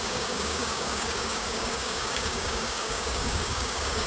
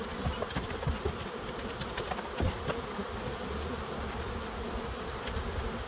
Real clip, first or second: second